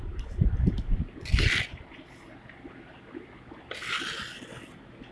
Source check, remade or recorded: recorded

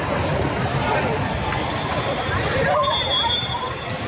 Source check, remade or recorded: remade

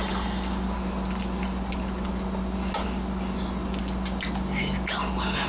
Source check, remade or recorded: recorded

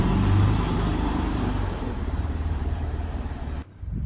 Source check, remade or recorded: remade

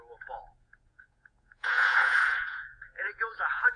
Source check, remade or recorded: remade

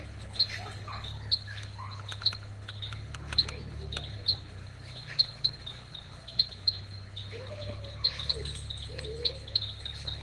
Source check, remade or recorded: remade